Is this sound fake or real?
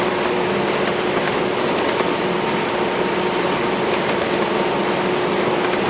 real